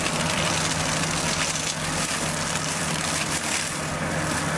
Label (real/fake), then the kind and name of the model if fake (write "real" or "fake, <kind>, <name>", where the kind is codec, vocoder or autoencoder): real